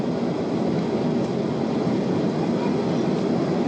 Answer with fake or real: real